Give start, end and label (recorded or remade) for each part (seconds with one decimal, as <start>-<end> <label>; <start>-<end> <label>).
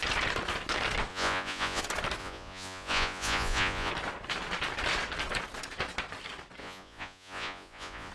0.0-1.1 recorded; 1.1-1.8 remade; 1.8-2.2 recorded; 2.2-3.9 remade; 3.9-6.6 recorded; 6.6-8.1 remade